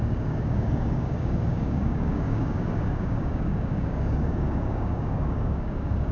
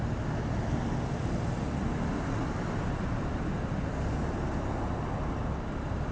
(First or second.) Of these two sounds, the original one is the second